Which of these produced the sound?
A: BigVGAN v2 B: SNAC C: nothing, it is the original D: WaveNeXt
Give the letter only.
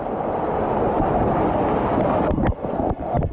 C